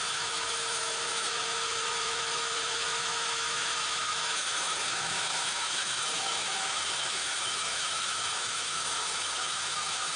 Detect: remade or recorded remade